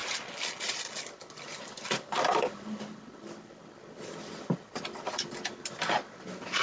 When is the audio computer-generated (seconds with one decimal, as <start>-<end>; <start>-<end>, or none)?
0.0-1.0; 1.5-5.5